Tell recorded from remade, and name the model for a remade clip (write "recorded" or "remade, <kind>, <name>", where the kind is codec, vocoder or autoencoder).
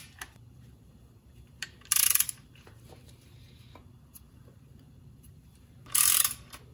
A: remade, vocoder, BigVGAN v2